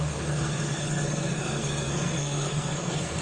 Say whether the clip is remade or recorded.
remade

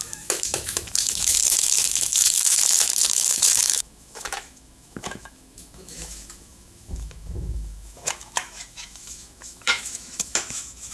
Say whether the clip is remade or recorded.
remade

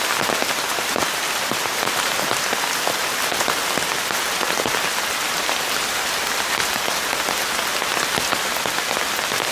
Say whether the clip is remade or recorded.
recorded